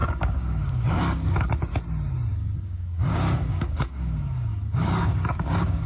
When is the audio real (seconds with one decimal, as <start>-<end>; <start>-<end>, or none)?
1.7-2.3